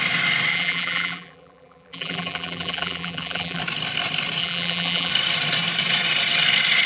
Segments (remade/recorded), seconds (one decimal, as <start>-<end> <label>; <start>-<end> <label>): 0.0-0.5 recorded; 0.5-3.6 remade; 3.6-4.4 recorded; 4.4-5.1 remade; 5.1-6.9 recorded

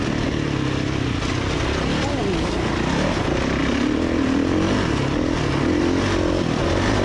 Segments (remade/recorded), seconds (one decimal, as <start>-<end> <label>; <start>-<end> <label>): 0.0-7.0 recorded